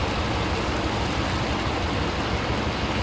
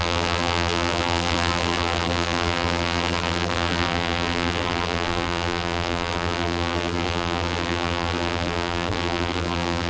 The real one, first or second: first